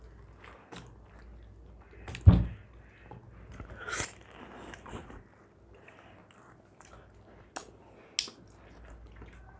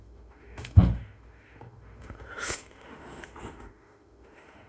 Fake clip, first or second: second